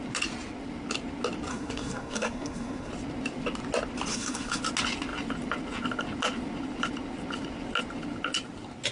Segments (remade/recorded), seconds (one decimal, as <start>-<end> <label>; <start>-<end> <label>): 0.0-1.5 recorded; 1.5-2.9 remade; 2.9-4.1 recorded; 4.1-4.6 remade; 4.6-8.9 recorded